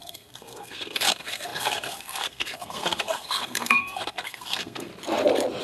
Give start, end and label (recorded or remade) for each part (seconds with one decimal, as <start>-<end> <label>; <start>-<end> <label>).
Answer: 0.0-4.9 remade; 4.9-5.6 recorded